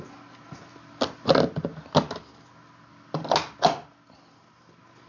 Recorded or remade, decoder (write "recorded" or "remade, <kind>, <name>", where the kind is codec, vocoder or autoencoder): recorded